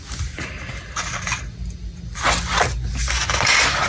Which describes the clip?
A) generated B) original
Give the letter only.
B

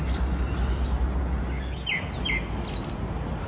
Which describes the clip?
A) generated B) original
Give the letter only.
B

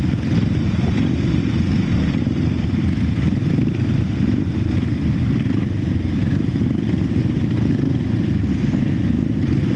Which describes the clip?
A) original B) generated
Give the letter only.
A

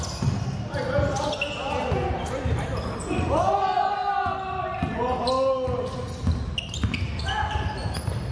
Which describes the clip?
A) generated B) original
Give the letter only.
B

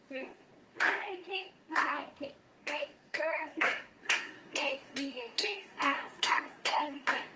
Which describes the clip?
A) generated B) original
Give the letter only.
A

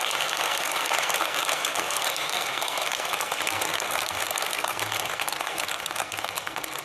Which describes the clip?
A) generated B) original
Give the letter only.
A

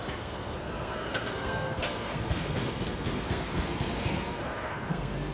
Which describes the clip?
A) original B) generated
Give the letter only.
B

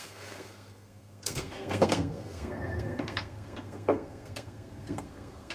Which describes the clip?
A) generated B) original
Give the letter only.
A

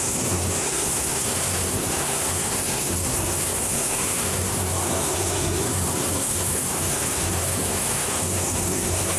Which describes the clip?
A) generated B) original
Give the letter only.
A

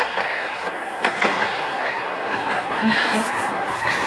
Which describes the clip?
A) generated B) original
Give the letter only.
A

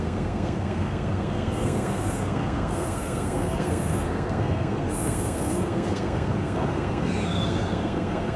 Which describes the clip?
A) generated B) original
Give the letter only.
A